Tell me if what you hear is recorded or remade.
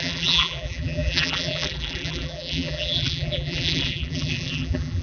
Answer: remade